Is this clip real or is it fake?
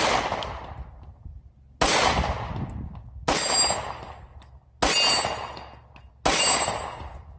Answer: real